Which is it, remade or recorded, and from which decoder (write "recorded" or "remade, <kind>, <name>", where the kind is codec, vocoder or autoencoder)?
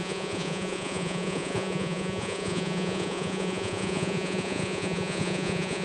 remade, vocoder, Vocos